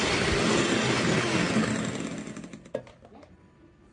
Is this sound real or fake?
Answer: real